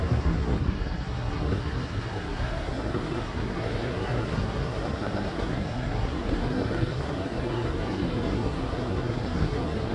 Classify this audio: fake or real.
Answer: fake